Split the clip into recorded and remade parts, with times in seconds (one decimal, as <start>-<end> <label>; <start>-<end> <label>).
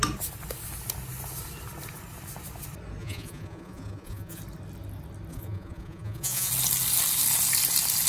0.0-3.0 recorded; 3.0-4.4 remade; 4.4-5.3 recorded; 5.3-6.5 remade; 6.5-8.1 recorded